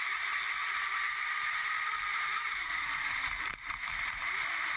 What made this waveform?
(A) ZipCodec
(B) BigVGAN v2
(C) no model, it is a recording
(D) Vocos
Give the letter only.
B